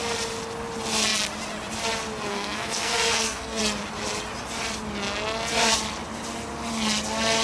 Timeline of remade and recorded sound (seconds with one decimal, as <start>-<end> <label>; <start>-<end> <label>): 0.0-2.3 recorded; 2.3-3.6 remade; 3.6-7.4 recorded